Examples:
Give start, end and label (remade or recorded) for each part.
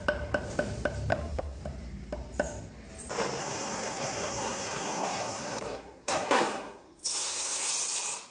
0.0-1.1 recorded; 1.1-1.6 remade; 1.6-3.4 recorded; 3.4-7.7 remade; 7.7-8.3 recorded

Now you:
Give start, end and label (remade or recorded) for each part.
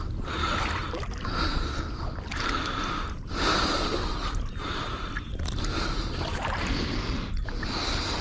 0.0-8.2 recorded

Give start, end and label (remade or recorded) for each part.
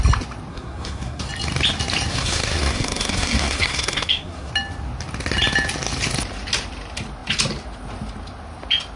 0.0-0.5 recorded; 0.5-1.3 remade; 1.3-2.1 recorded; 2.1-4.5 remade; 4.5-9.0 recorded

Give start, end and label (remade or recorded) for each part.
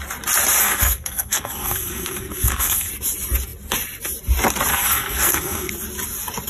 0.0-0.6 recorded; 0.6-2.9 remade; 2.9-4.7 recorded; 4.7-5.7 remade; 5.7-6.5 recorded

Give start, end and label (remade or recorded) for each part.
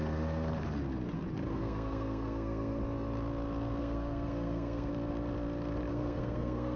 0.0-1.5 recorded; 1.5-2.8 remade; 2.8-3.8 recorded; 3.8-4.9 remade; 4.9-5.9 recorded; 5.9-6.8 remade